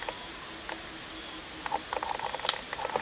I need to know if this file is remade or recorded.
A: recorded